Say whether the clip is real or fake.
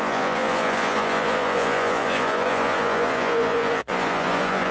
fake